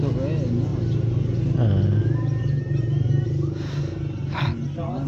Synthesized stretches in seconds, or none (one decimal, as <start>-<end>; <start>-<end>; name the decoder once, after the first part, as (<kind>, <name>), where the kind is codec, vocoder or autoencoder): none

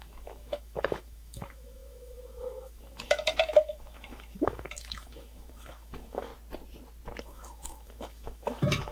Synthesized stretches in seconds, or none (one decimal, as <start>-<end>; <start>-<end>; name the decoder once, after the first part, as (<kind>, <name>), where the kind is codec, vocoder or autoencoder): 0.0-6.3 (autoencoder, DAC-VAE); 7.2-8.9

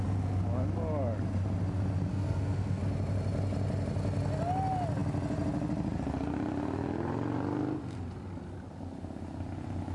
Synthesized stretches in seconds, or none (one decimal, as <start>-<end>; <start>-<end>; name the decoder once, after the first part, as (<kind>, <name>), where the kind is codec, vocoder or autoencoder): 2.1-2.8 (codec, SNAC)

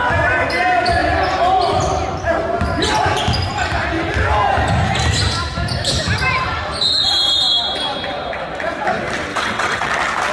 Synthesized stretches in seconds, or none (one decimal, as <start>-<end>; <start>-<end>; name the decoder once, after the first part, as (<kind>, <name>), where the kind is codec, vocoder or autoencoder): 9.3-9.9 (vocoder, WaveNeXt)

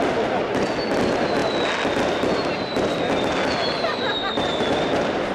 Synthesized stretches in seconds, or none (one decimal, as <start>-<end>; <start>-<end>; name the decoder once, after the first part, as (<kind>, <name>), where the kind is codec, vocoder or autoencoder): none

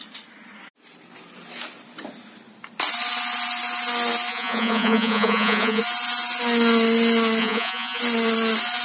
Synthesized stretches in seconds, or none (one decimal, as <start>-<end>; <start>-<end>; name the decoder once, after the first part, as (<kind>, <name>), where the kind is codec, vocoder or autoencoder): 4.3-5.8 (vocoder, Vocos); 7.4-8.0

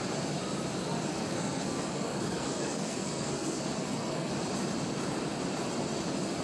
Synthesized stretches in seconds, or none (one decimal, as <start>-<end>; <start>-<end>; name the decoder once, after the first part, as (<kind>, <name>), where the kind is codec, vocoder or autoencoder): 1.1-4.3 (codec, SNAC)